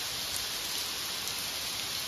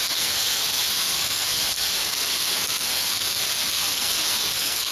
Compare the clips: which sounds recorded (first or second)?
first